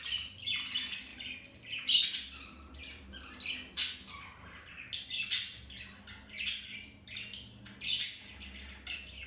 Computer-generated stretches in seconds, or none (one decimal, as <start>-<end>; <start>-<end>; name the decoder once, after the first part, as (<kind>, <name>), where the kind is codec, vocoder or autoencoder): none